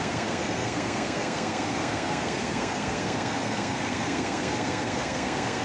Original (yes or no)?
no